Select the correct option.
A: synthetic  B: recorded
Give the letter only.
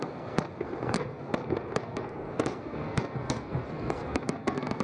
A